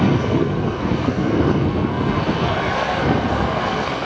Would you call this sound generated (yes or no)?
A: yes